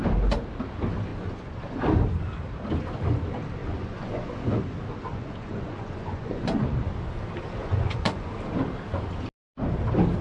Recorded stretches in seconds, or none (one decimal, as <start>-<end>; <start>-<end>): 0.0-1.1; 1.6-3.6; 4.6-5.1; 6.9-7.6; 8.3-10.2